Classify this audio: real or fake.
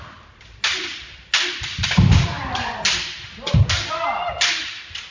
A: real